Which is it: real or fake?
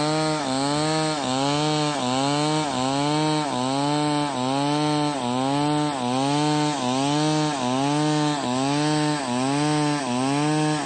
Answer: real